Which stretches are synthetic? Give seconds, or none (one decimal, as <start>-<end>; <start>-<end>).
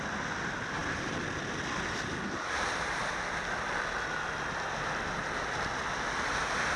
none